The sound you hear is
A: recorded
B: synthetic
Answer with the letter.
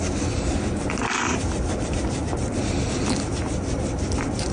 B